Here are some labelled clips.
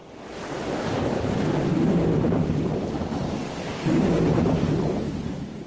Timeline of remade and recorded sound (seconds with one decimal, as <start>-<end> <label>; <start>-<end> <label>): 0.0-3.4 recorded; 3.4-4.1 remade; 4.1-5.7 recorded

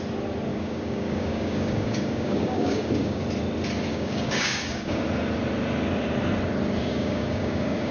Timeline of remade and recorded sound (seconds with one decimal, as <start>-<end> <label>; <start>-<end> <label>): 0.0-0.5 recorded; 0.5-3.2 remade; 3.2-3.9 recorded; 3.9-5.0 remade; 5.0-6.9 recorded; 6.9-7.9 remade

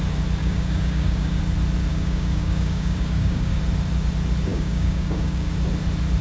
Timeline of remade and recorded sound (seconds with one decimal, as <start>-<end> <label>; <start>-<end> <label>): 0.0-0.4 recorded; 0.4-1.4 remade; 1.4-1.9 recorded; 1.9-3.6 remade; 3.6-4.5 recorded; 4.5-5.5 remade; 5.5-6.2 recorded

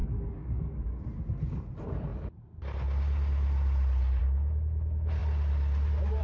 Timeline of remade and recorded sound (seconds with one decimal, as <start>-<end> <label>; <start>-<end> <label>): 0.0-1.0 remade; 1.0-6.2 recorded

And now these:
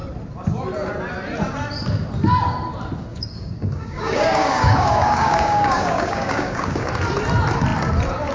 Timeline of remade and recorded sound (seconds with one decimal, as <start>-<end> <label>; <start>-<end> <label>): 0.0-3.1 recorded; 3.1-6.9 remade; 6.9-8.3 recorded

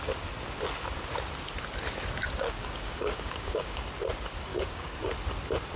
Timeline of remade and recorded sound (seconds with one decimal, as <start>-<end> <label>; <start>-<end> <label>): 0.0-2.4 recorded; 2.4-3.8 remade; 3.8-4.5 recorded; 4.5-5.0 remade; 5.0-5.8 recorded